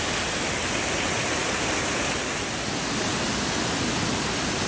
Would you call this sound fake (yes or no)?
no